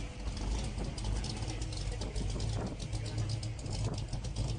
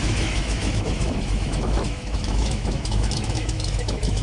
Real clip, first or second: first